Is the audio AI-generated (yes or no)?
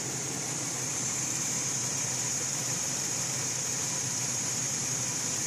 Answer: yes